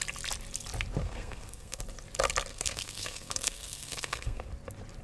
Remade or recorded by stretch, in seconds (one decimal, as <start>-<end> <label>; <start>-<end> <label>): 0.0-1.0 recorded; 1.0-1.8 remade; 1.8-2.5 recorded; 2.5-4.5 remade; 4.5-5.0 recorded